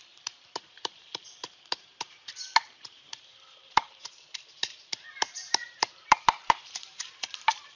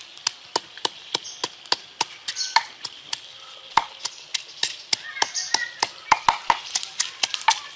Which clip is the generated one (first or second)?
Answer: first